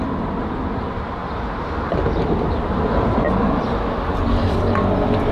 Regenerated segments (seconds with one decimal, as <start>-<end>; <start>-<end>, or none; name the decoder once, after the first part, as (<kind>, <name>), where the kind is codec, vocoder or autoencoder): none